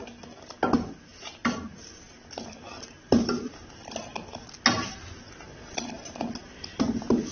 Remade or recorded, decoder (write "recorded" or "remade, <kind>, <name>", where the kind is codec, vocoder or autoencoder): recorded